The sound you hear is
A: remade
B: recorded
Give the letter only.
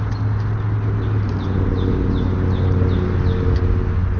B